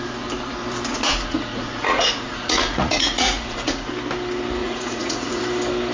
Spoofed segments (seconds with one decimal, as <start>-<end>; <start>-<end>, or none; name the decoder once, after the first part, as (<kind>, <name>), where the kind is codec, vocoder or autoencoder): 0.9-3.9 (vocoder, Vocos); 4.6-5.4